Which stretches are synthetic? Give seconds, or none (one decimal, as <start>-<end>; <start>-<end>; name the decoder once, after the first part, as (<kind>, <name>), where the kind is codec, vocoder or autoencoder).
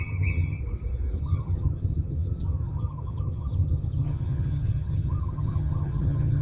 0.0-0.6 (vocoder, HiFi-GAN); 1.2-6.4